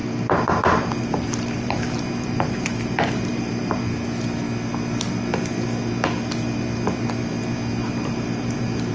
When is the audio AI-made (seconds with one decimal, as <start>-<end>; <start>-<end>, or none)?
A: 0.0-3.8; 7.8-8.9